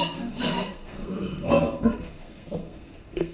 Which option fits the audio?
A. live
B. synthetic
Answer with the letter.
B